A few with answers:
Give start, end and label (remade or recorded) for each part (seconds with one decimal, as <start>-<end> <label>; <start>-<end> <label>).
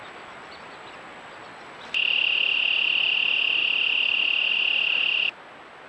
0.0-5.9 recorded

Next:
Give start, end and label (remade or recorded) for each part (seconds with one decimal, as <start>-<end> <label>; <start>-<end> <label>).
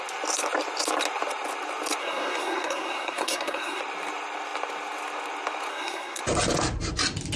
0.0-2.0 recorded; 2.0-3.8 remade; 3.8-5.7 recorded; 5.7-6.2 remade; 6.2-7.4 recorded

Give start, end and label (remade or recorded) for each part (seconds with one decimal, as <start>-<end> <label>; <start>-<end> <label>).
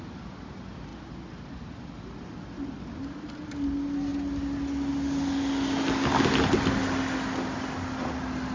0.0-8.5 recorded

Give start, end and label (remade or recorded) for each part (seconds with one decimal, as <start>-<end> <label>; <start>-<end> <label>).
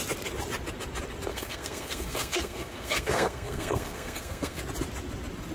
0.0-1.3 recorded; 1.3-4.6 remade; 4.6-5.5 recorded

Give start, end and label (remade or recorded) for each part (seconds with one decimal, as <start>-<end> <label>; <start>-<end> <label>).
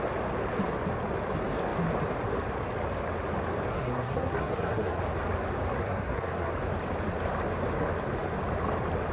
0.0-3.7 recorded; 3.7-5.0 remade; 5.0-5.7 recorded; 5.7-6.5 remade; 6.5-9.1 recorded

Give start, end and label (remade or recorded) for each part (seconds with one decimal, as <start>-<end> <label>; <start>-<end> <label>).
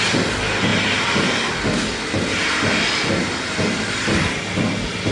0.0-5.1 recorded